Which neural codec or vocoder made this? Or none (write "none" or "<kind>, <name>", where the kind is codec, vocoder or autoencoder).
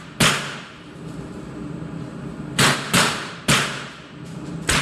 vocoder, BigVGAN v2